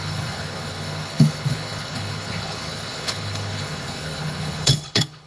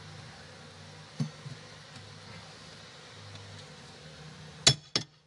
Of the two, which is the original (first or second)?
second